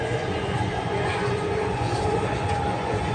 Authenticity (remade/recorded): remade